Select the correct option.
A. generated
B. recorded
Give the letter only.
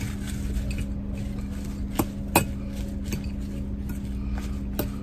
B